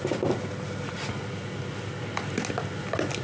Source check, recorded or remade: recorded